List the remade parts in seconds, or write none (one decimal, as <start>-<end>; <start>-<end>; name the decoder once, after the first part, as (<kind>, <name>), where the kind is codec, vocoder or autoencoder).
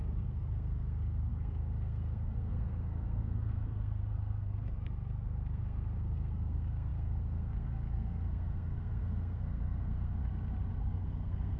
0.0-10.2 (codec, SNAC); 10.8-11.6